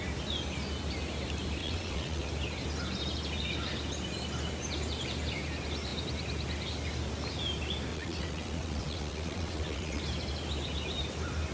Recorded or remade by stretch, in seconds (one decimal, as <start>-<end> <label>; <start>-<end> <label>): 0.0-1.6 recorded; 1.6-2.3 remade; 2.3-7.9 recorded; 7.9-10.0 remade; 10.0-11.5 recorded